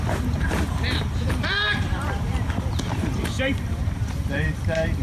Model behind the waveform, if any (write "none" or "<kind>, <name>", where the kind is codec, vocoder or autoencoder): vocoder, BigVGAN v2